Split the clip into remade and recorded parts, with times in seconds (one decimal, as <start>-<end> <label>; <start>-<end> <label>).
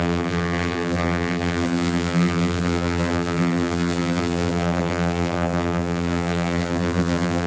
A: 0.0-7.5 remade